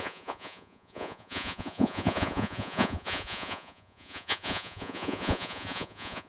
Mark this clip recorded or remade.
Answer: remade